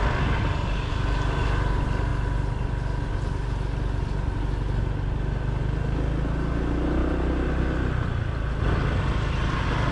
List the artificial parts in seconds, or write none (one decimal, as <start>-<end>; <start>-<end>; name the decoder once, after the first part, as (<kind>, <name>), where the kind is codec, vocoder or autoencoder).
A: none